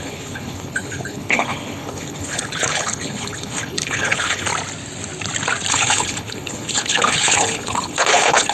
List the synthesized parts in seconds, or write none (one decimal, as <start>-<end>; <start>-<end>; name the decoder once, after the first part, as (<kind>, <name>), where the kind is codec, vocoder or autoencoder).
0.0-4.5 (codec, HILCodec); 5.7-8.5